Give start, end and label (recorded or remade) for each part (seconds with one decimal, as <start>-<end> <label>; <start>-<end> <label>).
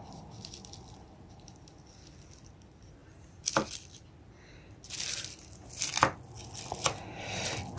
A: 0.0-7.8 recorded